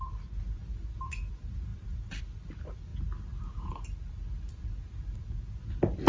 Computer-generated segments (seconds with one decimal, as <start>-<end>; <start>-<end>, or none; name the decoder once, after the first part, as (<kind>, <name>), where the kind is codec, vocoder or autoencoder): none